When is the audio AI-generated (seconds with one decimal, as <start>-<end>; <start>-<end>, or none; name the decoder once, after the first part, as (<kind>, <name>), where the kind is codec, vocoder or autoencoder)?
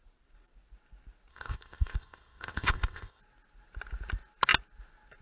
1.3-3.2 (codec, ZipCodec)